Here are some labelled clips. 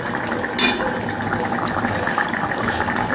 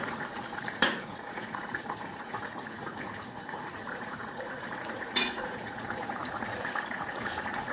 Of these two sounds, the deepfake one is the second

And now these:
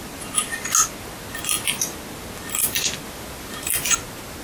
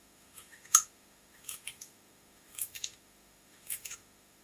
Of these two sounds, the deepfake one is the second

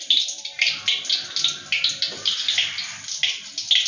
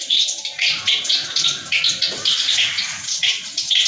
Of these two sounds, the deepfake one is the second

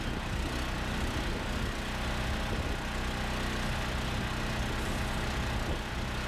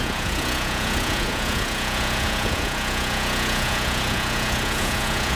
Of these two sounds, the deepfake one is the second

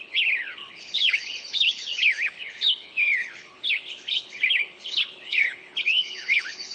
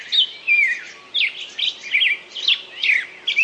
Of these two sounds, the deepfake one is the first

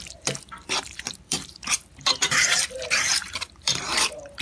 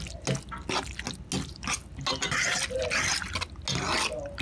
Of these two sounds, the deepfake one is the first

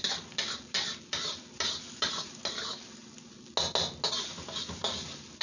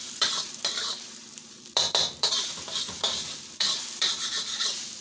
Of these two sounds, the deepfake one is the second